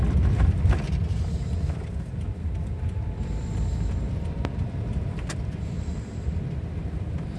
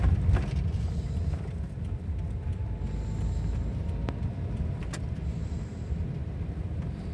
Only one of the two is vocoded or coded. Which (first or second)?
first